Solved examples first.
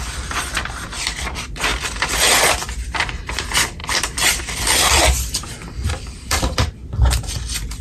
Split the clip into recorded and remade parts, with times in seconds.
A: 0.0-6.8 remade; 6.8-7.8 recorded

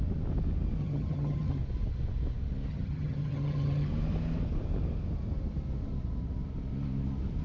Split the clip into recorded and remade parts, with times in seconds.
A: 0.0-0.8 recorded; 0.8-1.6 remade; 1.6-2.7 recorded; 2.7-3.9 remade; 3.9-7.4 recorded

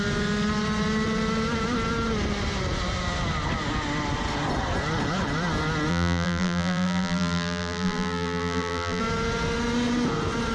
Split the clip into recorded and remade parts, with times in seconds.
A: 0.0-5.9 recorded; 5.9-9.0 remade; 9.0-10.5 recorded

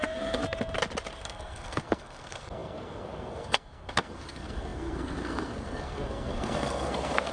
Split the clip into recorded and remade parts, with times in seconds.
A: 0.0-0.4 remade; 0.4-1.2 recorded; 1.2-7.3 remade

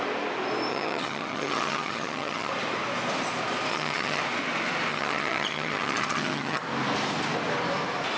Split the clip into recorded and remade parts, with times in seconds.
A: 0.0-0.7 recorded; 0.7-2.5 remade; 2.5-3.7 recorded; 3.7-4.2 remade; 4.2-4.9 recorded; 4.9-6.6 remade; 6.6-8.2 recorded

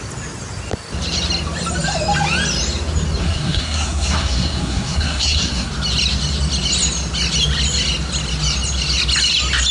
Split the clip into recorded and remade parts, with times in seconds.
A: 0.0-3.2 recorded; 3.2-5.7 remade; 5.7-9.7 recorded

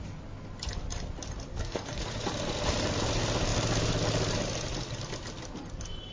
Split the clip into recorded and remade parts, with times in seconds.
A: 0.0-1.5 recorded; 1.5-2.0 remade; 2.0-6.1 recorded